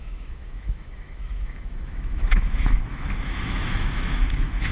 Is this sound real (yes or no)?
no